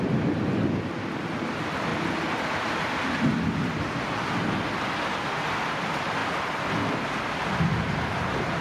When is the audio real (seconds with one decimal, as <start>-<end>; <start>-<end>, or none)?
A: 0.0-8.6